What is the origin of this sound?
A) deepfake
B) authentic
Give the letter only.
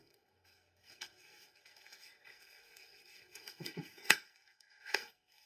A